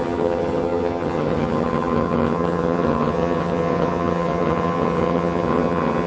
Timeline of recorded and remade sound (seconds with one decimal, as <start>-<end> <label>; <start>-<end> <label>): 0.0-6.1 remade